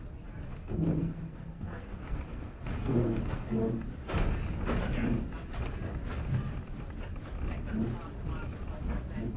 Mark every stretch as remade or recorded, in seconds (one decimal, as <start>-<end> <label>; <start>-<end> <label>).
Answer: 0.0-0.5 recorded; 0.5-3.6 remade; 3.6-9.4 recorded